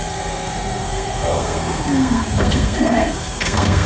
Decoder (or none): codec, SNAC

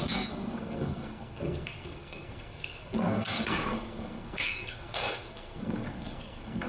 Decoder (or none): codec, SNAC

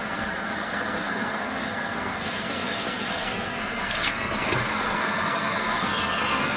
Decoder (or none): codec, SNAC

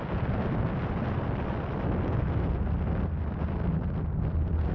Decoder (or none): none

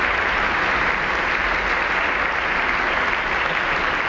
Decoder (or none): none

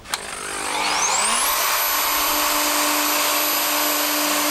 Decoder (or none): none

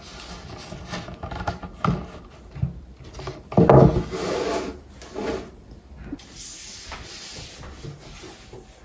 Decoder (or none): none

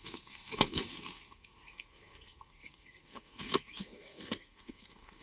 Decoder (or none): codec, SNAC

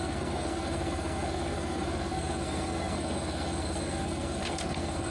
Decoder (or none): codec, SNAC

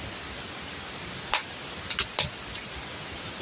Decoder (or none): none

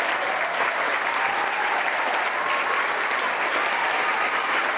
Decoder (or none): none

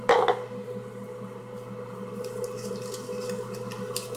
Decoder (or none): none